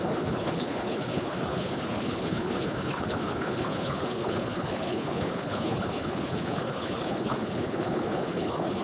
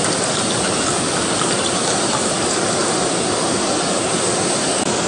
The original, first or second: second